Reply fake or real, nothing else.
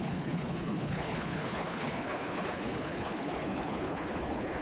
fake